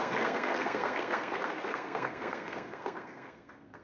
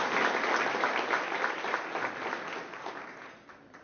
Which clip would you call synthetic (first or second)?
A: first